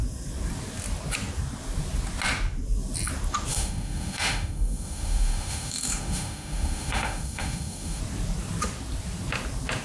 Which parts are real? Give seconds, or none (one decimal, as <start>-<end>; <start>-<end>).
0.0-3.5; 8.0-9.8

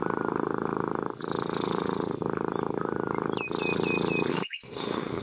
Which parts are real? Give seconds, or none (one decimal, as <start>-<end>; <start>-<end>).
0.0-4.3

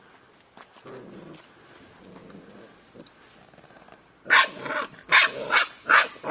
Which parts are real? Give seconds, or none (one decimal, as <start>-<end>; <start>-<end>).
0.0-6.3

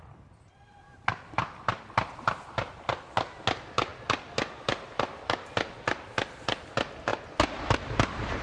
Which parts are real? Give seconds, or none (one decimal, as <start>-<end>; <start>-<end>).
0.0-8.4